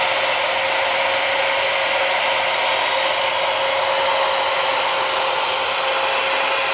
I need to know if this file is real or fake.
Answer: real